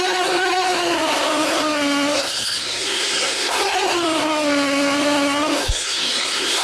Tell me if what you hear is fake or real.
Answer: fake